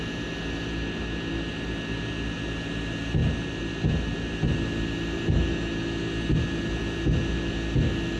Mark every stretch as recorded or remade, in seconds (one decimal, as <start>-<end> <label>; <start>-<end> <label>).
0.0-8.2 recorded